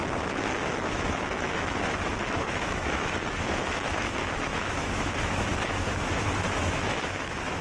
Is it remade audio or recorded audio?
remade